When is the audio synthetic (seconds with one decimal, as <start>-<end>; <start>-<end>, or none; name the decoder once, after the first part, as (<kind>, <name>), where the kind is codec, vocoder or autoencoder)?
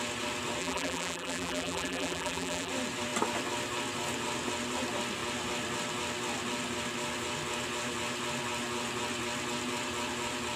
0.6-2.7 (vocoder, BigVGAN v2)